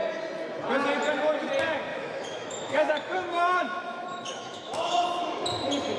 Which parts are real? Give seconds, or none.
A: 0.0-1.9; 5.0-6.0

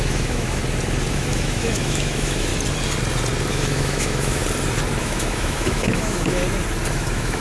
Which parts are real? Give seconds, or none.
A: 0.6-1.1; 2.5-3.5; 4.4-5.0; 6.4-6.9

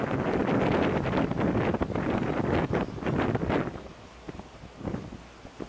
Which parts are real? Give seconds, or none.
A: 0.0-5.7

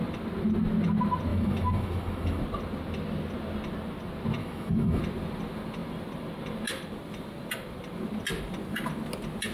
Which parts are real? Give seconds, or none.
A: 0.0-1.3; 2.4-4.4; 5.0-9.5

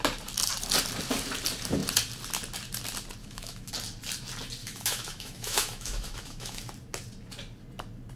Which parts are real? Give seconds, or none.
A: 0.0-3.2; 3.7-4.6; 6.6-8.2

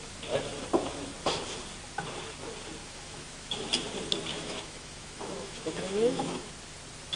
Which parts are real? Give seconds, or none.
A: 0.0-2.8; 3.7-4.3; 6.5-7.2